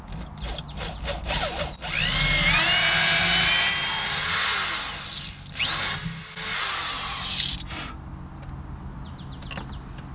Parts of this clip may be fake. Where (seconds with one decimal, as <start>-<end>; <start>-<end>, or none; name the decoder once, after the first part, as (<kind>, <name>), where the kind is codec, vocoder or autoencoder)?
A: none